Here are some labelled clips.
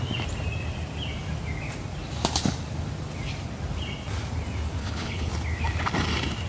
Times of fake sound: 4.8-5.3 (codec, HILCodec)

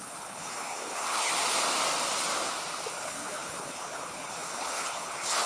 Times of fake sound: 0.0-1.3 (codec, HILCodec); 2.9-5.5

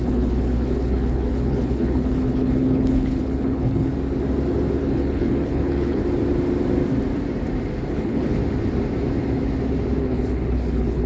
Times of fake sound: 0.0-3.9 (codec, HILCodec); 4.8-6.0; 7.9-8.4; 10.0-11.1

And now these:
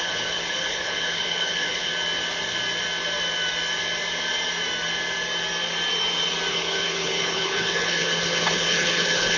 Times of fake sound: 0.0-1.9 (codec, HILCodec); 6.5-9.4

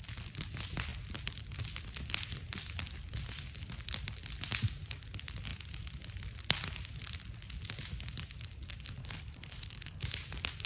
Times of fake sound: 9.0-10.0 (codec, HILCodec)

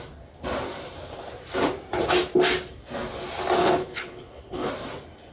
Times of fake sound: 3.6-4.7 (codec, HILCodec)

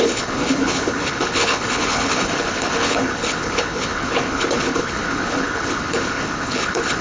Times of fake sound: 0.0-7.0 (codec, HILCodec)